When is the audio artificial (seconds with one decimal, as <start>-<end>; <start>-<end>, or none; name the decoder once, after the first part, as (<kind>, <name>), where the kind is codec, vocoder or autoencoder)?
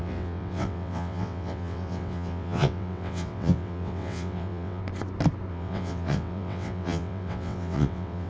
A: 0.0-4.8 (vocoder, WaveNeXt); 5.5-8.3